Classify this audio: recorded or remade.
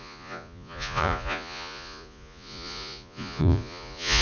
remade